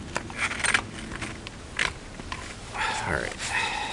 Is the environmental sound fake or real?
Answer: real